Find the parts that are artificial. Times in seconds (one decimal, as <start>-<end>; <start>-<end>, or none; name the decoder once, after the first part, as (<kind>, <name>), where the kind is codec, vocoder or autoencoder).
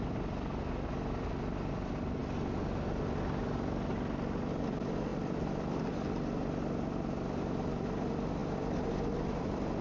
5.1-6.1 (vocoder, BigVGAN v2); 8.4-9.8